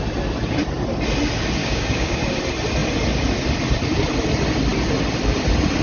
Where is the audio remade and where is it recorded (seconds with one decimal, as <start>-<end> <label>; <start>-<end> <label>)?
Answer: 0.0-1.6 recorded; 1.6-2.2 remade; 2.2-5.8 recorded